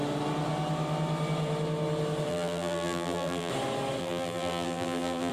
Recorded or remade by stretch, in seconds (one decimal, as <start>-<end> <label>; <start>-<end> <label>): 0.0-2.3 recorded; 2.3-3.5 remade; 3.5-4.0 recorded; 4.0-5.3 remade